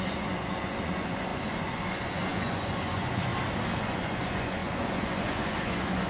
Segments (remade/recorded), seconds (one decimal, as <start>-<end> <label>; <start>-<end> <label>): 0.0-3.3 remade; 3.3-3.8 recorded; 3.8-6.1 remade